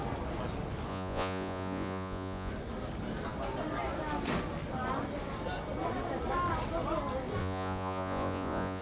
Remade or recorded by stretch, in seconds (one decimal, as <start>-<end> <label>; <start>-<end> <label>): 0.0-0.9 recorded; 0.9-2.5 remade; 2.5-7.4 recorded; 7.4-8.8 remade